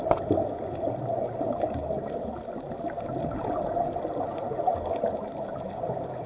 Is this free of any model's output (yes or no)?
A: yes